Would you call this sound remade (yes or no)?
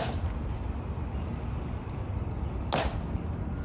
no